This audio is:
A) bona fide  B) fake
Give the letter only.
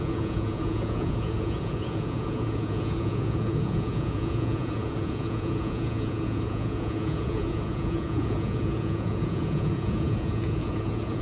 B